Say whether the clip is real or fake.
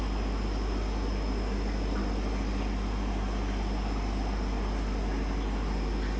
real